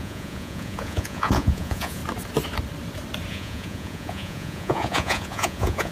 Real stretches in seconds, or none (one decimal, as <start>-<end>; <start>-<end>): 2.0-3.3